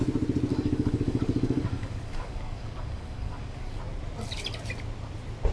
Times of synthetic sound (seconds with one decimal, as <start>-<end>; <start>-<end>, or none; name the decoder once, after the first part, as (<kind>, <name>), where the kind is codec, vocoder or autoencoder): 0.5-3.8 (codec, DAC)

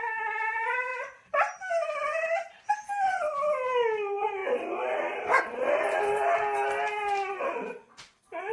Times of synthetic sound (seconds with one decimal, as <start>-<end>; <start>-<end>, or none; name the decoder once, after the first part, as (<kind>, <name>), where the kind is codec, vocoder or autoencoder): 0.9-2.7 (vocoder, BigVGAN v2); 4.4-5.4

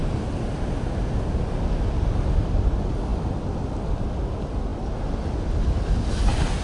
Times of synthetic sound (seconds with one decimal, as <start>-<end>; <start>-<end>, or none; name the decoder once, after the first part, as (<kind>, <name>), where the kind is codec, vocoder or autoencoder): none

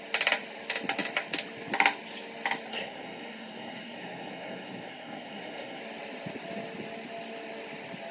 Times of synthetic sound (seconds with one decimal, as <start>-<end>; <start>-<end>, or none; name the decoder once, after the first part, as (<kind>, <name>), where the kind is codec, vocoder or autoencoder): 2.7-5.8 (codec, SNAC)

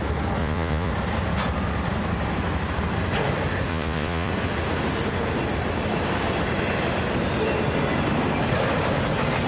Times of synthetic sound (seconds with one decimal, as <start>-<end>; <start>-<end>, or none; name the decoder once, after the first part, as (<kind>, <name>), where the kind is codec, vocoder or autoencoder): 0.4-0.9 (vocoder, Vocos); 3.7-4.3

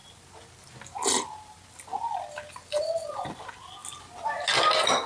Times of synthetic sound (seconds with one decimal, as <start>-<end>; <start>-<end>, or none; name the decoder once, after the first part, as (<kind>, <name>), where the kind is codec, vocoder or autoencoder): none

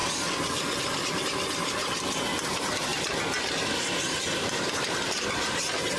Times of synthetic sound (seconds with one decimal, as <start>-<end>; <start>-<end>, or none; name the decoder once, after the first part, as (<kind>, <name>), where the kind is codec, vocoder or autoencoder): none